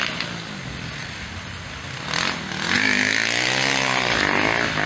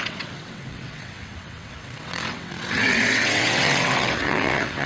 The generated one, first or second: second